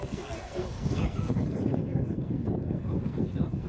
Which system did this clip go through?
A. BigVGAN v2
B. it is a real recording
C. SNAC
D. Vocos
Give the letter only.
C